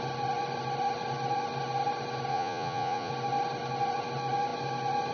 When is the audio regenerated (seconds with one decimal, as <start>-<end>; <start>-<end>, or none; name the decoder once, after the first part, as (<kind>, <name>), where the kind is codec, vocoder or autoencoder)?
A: 2.3-3.1 (vocoder, Vocos)

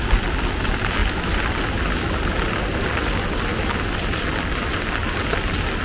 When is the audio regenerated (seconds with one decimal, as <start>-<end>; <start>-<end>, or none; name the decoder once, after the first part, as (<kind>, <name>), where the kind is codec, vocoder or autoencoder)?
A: none

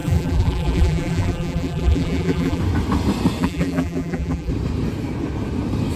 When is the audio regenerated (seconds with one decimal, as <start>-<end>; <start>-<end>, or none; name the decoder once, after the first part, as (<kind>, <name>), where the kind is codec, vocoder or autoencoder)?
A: 0.0-2.6 (vocoder, BigVGAN v2); 3.4-4.5

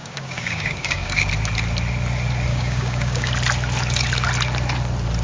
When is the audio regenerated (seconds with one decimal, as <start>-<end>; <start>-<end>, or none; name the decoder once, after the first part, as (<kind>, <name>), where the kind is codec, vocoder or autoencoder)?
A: 0.0-1.3 (codec, DAC); 2.5-3.3

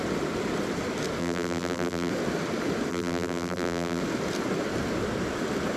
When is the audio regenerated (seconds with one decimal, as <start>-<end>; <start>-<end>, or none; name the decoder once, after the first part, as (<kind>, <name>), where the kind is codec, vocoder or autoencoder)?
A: 1.2-2.1 (vocoder, BigVGAN v2); 2.9-4.0

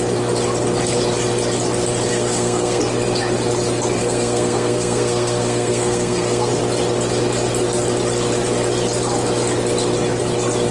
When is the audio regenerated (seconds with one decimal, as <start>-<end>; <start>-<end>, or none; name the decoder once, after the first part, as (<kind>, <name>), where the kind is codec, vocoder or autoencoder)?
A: 2.1-2.8 (codec, SNAC); 4.0-6.5

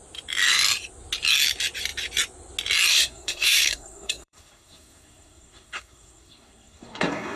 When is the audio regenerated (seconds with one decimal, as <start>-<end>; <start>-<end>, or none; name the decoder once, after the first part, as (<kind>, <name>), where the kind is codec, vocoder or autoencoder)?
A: 2.9-7.4 (codec, SNAC)